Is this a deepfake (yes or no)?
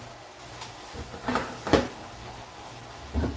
no